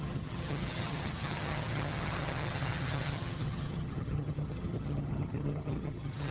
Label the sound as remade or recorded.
remade